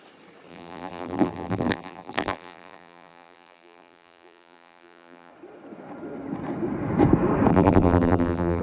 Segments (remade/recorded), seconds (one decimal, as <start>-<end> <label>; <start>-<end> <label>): 0.0-0.5 recorded; 0.5-5.3 remade; 5.3-7.5 recorded; 7.5-8.6 remade